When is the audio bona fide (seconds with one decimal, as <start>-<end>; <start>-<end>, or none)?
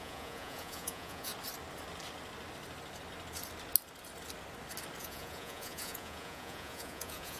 1.3-5.0